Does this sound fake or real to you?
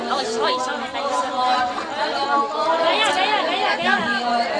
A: real